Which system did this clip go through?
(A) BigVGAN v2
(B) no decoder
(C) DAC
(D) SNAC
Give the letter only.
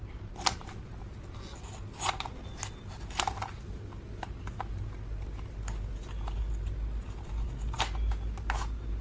B